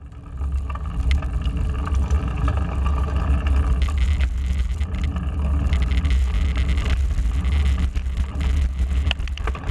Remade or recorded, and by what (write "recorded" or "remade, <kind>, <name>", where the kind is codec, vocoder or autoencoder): recorded